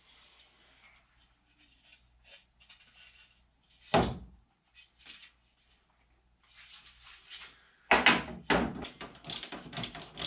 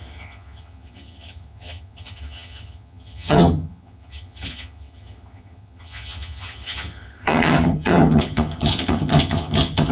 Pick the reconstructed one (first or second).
second